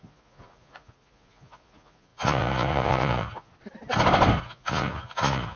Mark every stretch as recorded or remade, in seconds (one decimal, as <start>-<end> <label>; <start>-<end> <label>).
0.0-3.5 remade; 3.5-4.4 recorded; 4.4-5.6 remade